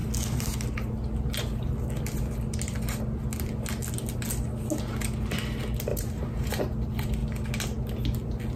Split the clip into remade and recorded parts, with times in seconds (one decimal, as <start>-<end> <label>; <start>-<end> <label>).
0.0-5.9 recorded; 5.9-6.5 remade; 6.5-8.6 recorded